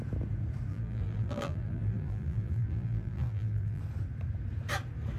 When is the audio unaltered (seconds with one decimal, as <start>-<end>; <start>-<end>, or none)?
0.0-0.7; 3.8-5.2